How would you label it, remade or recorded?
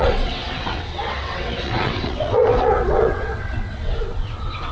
remade